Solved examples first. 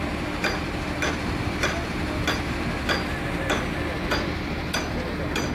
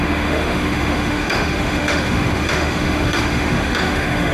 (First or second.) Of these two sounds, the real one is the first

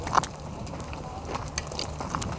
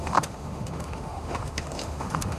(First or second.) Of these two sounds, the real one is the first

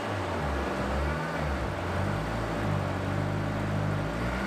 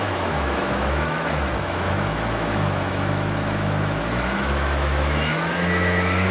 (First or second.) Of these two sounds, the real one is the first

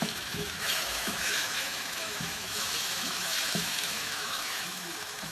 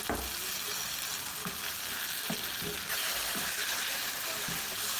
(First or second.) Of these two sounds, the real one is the second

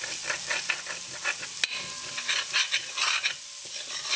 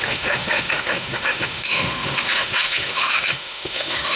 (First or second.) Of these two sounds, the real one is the first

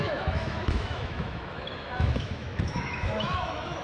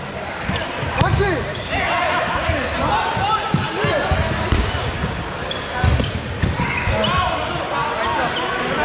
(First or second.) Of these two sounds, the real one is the second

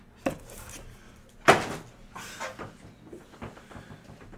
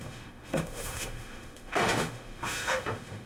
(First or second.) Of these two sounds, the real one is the first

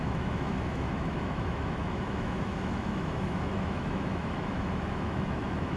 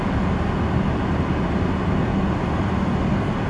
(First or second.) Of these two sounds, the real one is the second